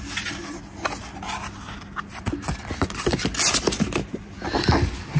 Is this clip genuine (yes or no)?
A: yes